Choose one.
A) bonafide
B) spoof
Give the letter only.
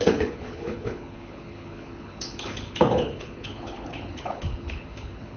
B